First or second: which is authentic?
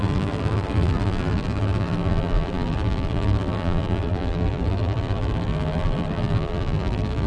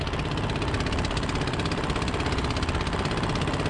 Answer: second